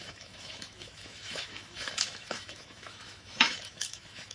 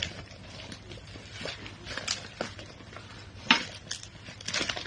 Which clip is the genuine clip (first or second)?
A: second